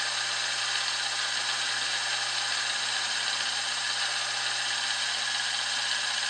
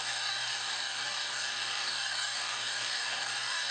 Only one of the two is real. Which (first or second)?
first